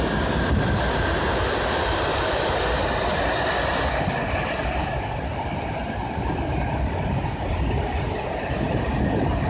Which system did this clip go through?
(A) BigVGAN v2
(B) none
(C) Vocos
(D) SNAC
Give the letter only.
B